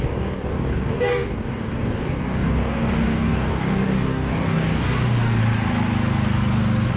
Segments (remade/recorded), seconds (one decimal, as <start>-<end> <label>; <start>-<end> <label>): 0.0-5.4 remade; 5.4-7.0 recorded